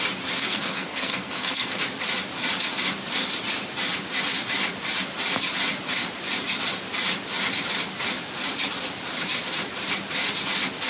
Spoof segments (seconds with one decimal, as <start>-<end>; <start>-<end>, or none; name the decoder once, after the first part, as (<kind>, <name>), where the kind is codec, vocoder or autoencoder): 0.4-1.8 (codec, SNAC)